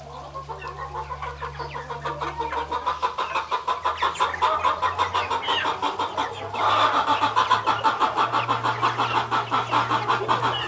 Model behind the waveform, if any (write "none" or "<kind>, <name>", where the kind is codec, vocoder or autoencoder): none